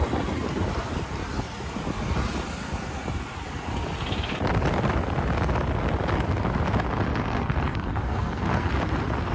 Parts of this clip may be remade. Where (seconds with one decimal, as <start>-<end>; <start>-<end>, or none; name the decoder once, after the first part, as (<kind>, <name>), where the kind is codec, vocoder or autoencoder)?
7.1-8.7 (codec, SNAC)